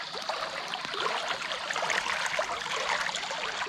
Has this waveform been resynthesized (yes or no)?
no